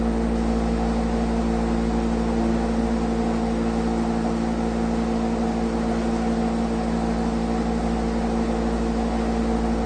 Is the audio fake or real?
real